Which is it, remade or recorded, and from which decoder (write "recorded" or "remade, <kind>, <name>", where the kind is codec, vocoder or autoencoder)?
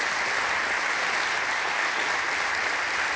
recorded